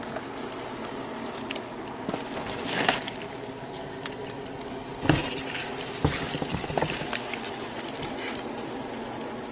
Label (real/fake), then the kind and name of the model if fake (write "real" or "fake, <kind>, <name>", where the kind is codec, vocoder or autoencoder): real